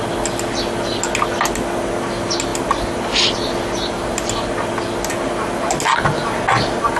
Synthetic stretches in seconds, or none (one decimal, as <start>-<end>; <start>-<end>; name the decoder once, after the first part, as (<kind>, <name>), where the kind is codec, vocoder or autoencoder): none